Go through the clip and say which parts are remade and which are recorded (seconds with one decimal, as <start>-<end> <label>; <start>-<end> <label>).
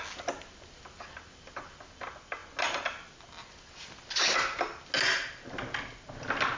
0.0-6.6 recorded